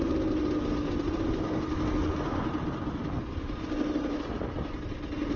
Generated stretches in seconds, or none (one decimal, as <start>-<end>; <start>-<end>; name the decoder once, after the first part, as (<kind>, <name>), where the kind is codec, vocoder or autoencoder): 2.0-2.5 (vocoder, Vocos)